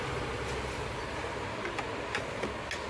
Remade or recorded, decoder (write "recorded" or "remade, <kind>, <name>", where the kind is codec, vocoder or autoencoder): recorded